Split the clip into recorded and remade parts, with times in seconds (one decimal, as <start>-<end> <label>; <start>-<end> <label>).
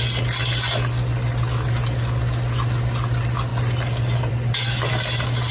0.0-5.5 recorded